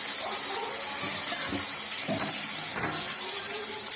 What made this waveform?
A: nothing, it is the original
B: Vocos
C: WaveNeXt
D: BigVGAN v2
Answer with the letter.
A